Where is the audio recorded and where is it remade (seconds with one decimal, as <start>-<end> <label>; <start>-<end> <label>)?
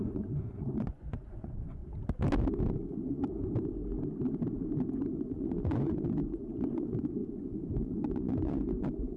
0.0-1.8 remade; 1.8-2.8 recorded; 2.8-3.2 remade; 3.2-5.1 recorded; 5.1-9.2 remade